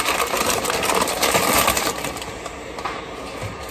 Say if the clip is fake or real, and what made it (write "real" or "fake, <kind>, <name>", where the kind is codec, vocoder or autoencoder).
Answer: real